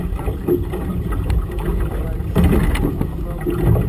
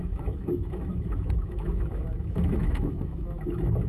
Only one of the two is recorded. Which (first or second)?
first